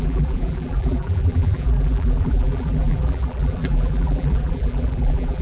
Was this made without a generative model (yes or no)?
no